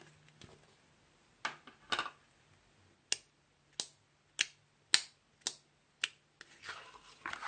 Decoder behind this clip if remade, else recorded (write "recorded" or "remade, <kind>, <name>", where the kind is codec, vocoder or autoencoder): recorded